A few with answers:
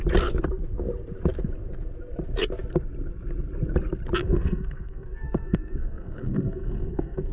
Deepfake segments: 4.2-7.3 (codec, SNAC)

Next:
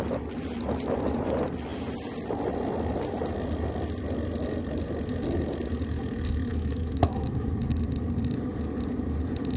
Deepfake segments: 6.5-7.5 (autoencoder, DAC-VAE)

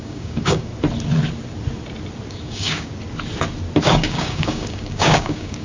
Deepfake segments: 0.0-0.7 (codec, DAC); 2.3-2.9; 3.8-5.6